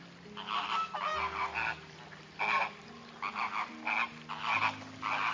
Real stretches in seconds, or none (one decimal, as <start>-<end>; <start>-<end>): 0.0-5.3